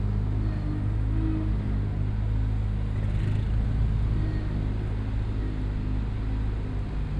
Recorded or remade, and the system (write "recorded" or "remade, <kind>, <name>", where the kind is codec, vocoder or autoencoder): recorded